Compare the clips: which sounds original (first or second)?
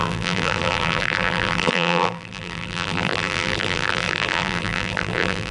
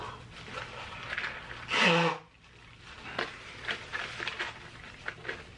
second